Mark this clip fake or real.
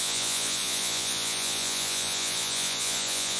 fake